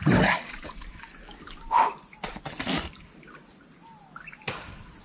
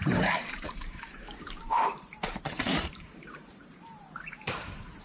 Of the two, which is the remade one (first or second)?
second